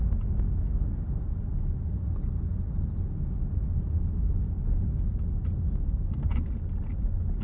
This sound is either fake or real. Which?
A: real